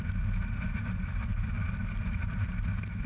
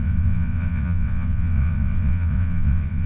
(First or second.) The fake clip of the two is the second